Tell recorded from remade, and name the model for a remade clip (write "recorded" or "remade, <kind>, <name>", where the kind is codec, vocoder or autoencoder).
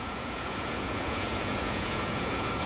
remade, vocoder, Vocos